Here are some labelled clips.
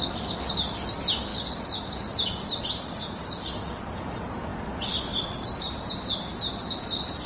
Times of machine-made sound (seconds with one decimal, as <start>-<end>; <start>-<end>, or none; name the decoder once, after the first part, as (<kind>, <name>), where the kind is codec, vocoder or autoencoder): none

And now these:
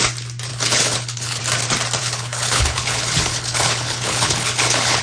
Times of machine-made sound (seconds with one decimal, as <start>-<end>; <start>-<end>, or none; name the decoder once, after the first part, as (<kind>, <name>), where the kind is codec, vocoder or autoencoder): 0.5-1.4 (codec, HILCodec); 2.0-5.0

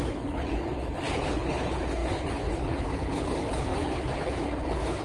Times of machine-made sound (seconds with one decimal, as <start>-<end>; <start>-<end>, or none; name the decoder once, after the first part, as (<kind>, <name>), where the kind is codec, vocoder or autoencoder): 0.0-5.0 (codec, HILCodec)

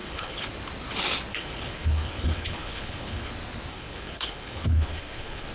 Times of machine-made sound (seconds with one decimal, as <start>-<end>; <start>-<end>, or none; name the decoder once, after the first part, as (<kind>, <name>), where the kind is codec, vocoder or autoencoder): 0.0-0.5 (codec, HILCodec); 1.3-3.3; 3.7-5.5

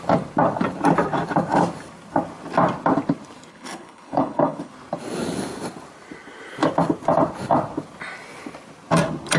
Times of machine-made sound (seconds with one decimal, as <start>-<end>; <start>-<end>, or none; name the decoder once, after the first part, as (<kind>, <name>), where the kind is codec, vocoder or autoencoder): 3.5-4.7 (codec, HILCodec)